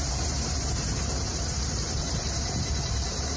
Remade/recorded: remade